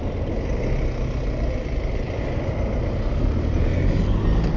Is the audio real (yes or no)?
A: yes